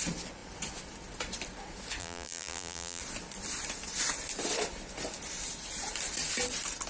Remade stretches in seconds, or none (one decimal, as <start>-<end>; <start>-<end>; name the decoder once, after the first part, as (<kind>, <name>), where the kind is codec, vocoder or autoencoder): 2.0-3.0 (vocoder, BigVGAN v2)

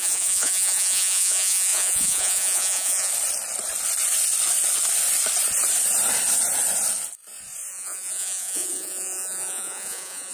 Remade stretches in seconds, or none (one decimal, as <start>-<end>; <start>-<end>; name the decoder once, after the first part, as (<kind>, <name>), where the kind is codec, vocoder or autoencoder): 0.0-3.1 (vocoder, Vocos); 7.7-10.3

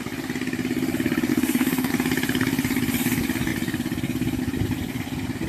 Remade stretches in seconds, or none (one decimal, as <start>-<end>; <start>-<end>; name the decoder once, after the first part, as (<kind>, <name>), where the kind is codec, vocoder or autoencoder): 1.3-1.9 (codec, SNAC)

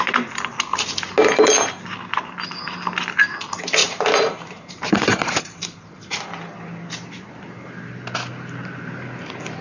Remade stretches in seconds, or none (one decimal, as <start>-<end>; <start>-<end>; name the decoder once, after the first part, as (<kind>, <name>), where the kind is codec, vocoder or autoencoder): 3.8-6.2 (vocoder, BigVGAN v2)

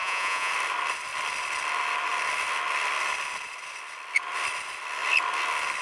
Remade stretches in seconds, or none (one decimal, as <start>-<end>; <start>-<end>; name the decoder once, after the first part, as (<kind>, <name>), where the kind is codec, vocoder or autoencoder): 0.0-0.5 (vocoder, Vocos)

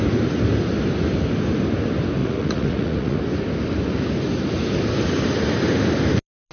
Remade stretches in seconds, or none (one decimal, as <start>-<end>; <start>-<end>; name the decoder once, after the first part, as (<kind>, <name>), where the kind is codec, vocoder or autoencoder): 2.2-3.2 (vocoder, Vocos)